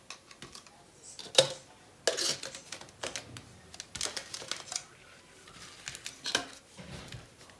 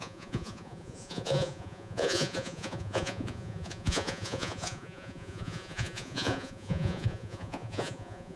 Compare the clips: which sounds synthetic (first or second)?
second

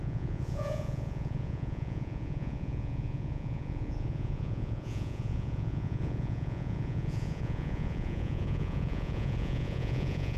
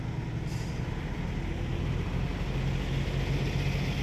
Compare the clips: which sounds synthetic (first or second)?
first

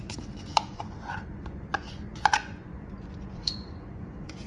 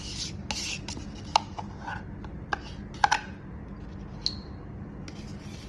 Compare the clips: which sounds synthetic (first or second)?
first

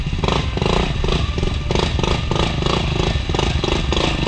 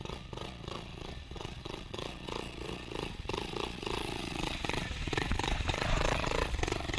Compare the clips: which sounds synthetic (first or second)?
second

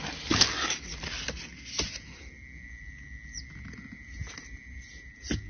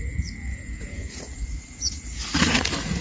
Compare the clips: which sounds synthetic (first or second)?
second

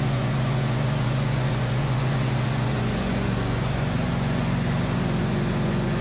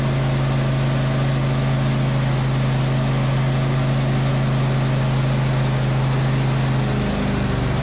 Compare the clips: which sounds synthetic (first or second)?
first